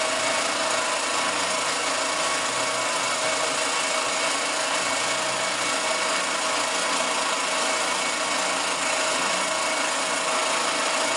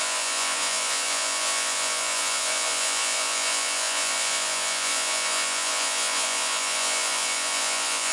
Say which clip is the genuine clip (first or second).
first